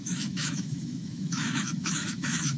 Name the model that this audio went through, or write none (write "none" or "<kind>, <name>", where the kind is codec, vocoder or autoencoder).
autoencoder, DAC-VAE